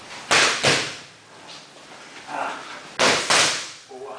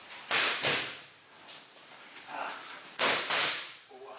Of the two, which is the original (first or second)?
first